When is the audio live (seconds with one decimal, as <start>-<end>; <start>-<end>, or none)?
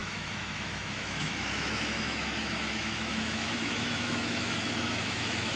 none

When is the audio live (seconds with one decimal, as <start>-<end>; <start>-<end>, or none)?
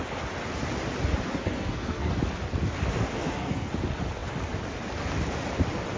0.0-1.4; 2.1-3.1; 3.7-6.0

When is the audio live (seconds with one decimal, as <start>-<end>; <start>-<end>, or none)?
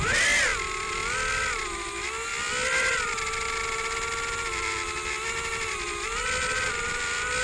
0.0-7.4